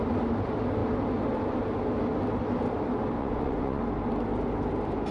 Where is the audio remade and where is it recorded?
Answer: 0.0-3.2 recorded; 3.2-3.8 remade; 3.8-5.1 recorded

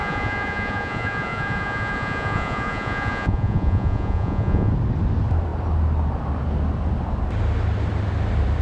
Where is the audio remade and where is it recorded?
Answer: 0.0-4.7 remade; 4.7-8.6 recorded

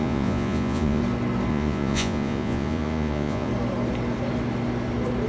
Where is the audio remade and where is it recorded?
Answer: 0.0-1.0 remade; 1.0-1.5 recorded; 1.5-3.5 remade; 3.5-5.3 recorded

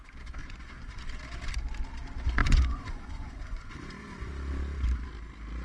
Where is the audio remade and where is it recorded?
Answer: 0.0-0.4 recorded; 0.4-1.0 remade; 1.0-2.4 recorded; 2.4-4.3 remade; 4.3-5.6 recorded

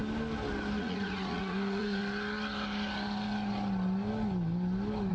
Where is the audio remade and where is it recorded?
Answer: 0.0-0.8 recorded; 0.8-2.0 remade; 2.0-5.1 recorded